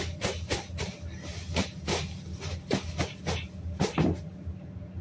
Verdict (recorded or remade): recorded